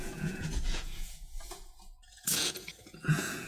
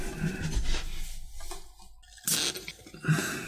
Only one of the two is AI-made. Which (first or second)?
first